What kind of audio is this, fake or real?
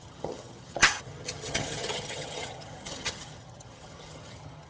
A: fake